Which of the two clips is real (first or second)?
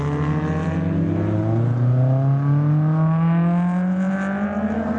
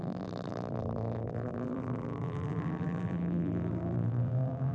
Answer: first